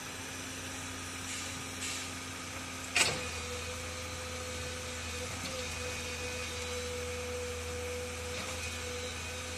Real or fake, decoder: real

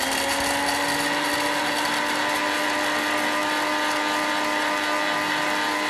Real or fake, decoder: real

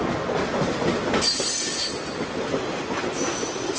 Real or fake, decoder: real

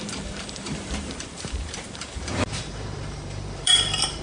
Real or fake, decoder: fake, vocoder, BigVGAN v2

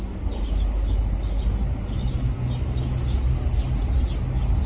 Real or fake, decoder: real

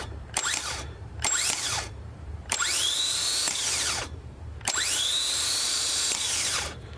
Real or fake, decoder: fake, vocoder, BigVGAN v2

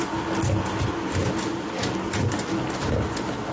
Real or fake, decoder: real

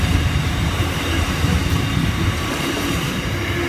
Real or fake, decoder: fake, vocoder, BigVGAN v2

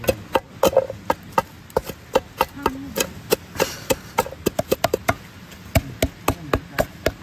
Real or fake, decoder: real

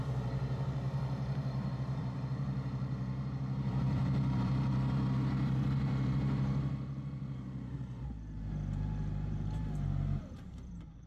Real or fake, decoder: fake, vocoder, BigVGAN v2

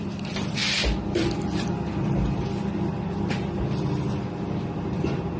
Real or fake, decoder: fake, vocoder, BigVGAN v2